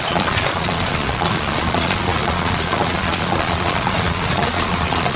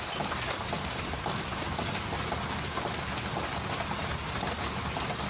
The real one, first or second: second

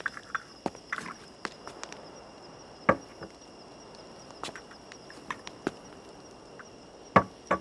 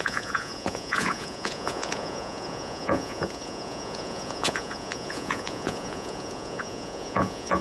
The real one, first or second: first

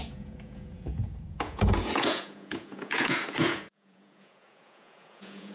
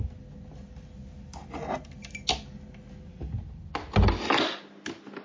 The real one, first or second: second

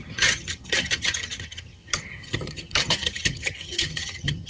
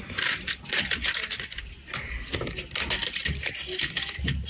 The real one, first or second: second